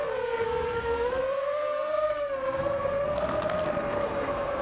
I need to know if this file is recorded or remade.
remade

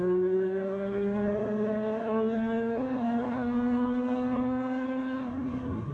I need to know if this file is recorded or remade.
remade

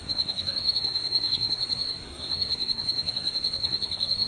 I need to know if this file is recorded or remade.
remade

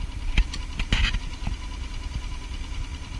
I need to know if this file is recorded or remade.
recorded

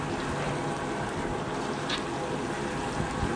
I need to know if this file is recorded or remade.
recorded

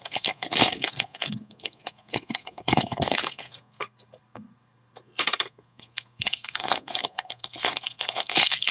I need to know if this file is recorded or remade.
remade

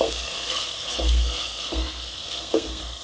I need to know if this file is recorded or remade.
remade